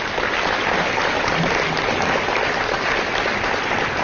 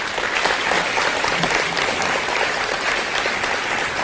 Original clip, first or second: first